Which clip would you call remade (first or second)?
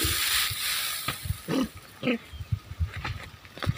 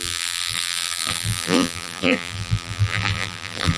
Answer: second